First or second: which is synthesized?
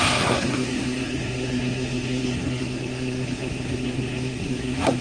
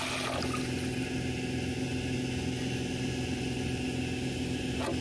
first